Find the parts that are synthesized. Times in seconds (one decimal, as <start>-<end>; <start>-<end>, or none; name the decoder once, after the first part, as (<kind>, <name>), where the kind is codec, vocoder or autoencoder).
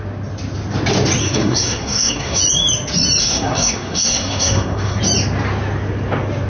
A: 1.2-2.4 (codec, SNAC); 3.2-5.0